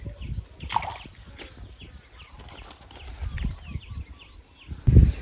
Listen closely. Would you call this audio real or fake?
real